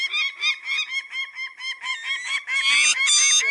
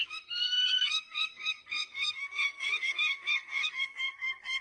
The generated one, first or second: second